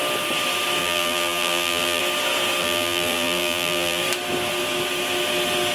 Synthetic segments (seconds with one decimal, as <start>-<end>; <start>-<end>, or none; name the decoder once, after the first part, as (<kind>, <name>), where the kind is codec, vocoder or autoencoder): 0.8-2.0 (vocoder, BigVGAN v2); 2.6-4.0